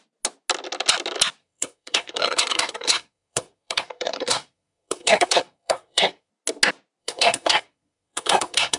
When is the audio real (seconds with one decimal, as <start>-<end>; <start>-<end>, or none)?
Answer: 0.0-1.4; 6.3-7.0